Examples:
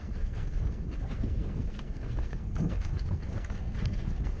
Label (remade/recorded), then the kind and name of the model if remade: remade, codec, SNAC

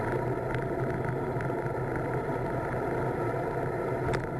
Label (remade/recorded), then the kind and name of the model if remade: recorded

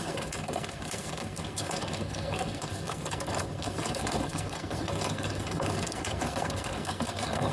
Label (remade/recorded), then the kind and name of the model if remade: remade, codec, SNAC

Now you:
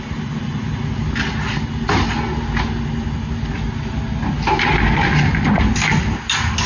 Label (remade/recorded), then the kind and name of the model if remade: recorded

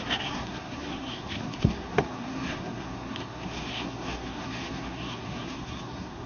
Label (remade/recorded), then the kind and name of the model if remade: remade, codec, SNAC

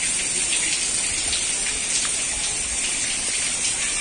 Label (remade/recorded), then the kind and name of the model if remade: recorded